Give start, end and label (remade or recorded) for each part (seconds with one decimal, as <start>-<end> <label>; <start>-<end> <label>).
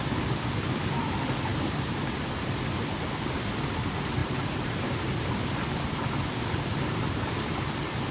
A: 0.0-1.5 recorded; 1.5-2.0 remade; 2.0-4.2 recorded; 4.2-5.4 remade; 5.4-8.1 recorded